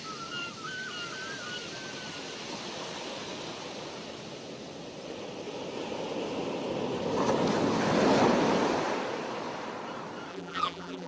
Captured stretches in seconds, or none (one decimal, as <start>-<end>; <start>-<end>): 0.0-10.3